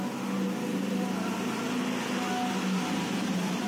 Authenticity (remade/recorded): recorded